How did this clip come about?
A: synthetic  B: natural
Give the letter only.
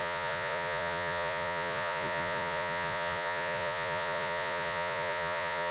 A